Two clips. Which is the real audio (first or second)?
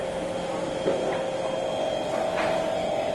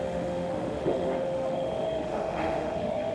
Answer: first